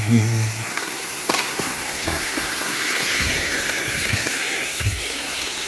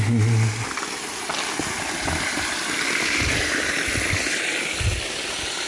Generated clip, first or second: first